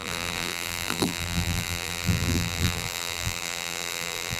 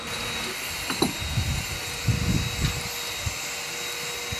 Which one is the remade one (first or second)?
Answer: first